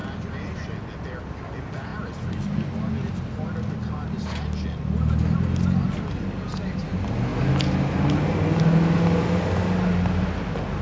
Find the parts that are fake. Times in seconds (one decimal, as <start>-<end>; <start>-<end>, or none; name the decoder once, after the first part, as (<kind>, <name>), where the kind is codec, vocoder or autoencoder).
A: none